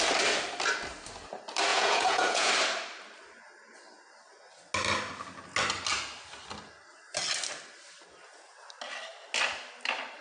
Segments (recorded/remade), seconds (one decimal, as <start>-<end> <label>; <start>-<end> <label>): 0.0-1.7 recorded; 1.7-2.5 remade; 2.5-10.2 recorded